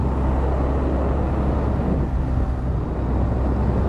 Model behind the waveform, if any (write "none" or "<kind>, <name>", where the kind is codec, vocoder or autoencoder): none